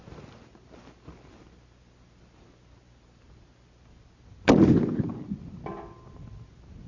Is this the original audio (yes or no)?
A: yes